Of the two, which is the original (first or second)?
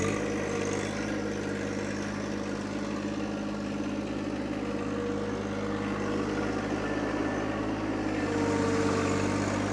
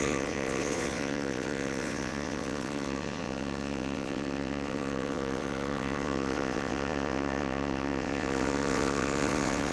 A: first